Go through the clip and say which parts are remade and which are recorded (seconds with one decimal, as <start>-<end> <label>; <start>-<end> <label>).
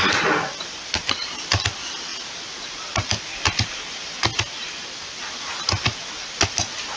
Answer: 0.0-2.1 remade; 2.1-2.8 recorded; 2.8-4.3 remade; 4.3-5.2 recorded; 5.2-7.0 remade